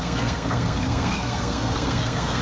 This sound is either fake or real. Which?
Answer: fake